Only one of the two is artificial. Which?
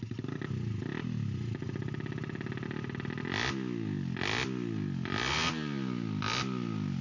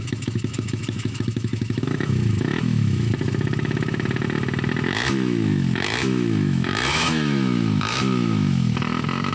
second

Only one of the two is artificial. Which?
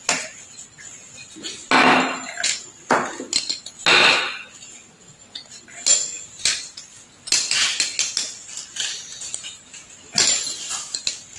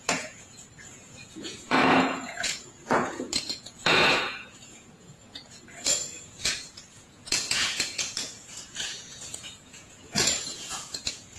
second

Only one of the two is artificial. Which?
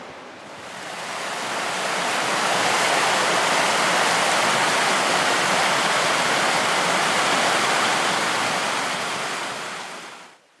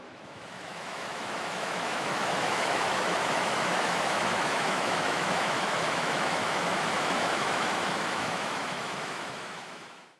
second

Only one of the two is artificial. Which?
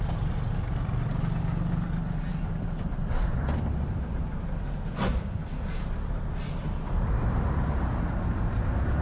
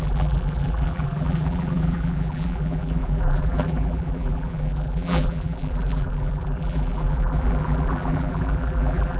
second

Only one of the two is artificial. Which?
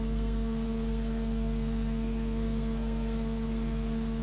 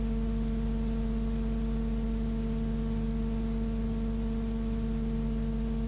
first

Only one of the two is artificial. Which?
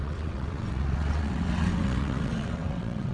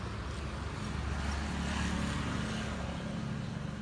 first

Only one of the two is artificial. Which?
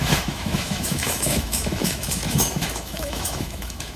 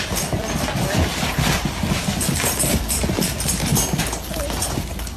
first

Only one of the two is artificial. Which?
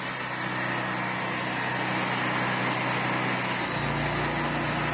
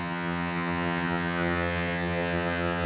second